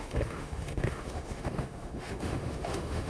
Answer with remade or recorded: remade